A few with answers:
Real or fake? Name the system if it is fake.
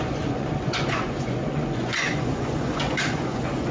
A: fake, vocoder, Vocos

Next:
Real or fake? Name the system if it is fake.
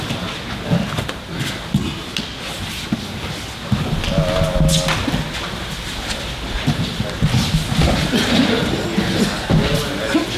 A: real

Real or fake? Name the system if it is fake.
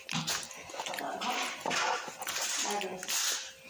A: real